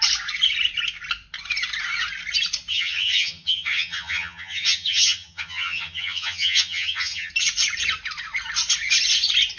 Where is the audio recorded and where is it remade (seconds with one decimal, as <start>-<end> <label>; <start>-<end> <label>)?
0.0-2.7 recorded; 2.7-7.3 remade; 7.3-9.6 recorded